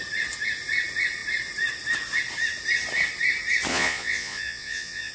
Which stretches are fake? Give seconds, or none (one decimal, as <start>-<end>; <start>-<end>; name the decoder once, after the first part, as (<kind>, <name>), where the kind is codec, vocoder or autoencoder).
3.7-5.1 (vocoder, Vocos)